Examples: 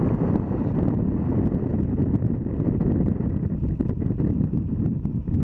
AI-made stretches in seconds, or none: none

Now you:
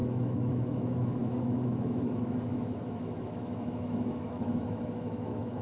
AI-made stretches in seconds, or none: 0.0-5.6 (autoencoder, DAC-VAE)

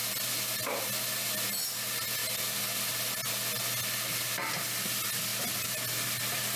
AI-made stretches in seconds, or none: none

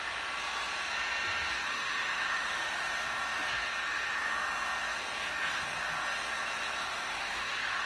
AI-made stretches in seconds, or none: 1.7-2.9 (autoencoder, DAC-VAE); 6.8-7.9